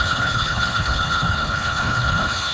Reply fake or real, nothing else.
fake